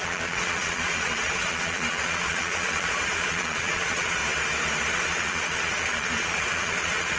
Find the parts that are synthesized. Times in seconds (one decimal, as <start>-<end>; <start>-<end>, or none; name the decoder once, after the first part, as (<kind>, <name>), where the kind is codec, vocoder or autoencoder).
0.0-4.2 (vocoder, Vocos); 4.9-7.2